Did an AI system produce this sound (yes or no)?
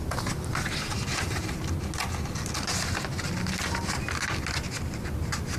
no